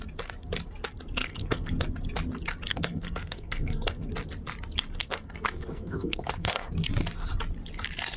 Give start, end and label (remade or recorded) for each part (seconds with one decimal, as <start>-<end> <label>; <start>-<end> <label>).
0.0-1.2 recorded; 1.2-1.7 remade; 1.7-2.7 recorded; 2.7-4.1 remade; 4.1-5.0 recorded; 5.0-6.7 remade; 6.7-8.2 recorded